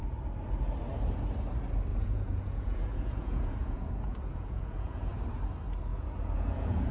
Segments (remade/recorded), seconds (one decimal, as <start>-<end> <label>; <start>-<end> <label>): 0.0-1.9 recorded; 1.9-5.3 remade; 5.3-5.9 recorded; 5.9-6.9 remade